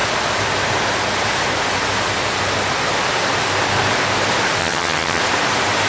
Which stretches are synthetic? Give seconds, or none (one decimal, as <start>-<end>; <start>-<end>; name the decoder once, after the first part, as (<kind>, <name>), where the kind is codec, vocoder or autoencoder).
4.6-5.2 (vocoder, HiFi-GAN)